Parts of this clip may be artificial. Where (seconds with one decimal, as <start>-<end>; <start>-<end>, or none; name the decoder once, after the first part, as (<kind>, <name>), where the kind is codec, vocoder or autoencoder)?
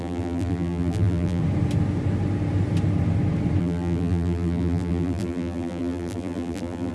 0.0-1.4 (vocoder, BigVGAN v2); 3.6-6.9